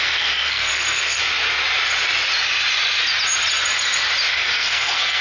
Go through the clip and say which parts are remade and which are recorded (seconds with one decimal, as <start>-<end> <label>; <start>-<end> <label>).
0.0-1.2 remade; 1.2-4.3 recorded; 4.3-5.2 remade